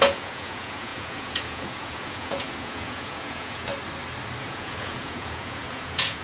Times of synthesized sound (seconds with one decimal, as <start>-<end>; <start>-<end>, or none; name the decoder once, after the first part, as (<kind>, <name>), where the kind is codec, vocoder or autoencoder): 0.0-3.7 (vocoder, Vocos); 4.4-6.2